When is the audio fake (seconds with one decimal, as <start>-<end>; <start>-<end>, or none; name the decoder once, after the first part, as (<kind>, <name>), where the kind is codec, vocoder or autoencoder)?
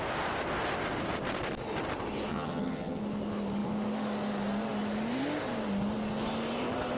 2.3-3.0 (vocoder, HiFi-GAN)